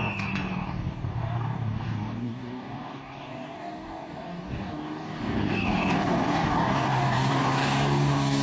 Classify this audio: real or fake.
fake